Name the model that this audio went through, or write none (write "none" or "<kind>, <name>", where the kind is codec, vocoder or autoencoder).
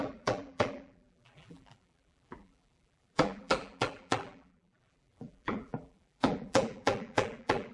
vocoder, BigVGAN v2